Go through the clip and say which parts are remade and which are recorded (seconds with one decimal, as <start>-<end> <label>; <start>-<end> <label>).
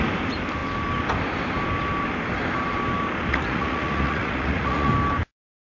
0.0-3.3 recorded; 3.3-4.9 remade; 4.9-5.6 recorded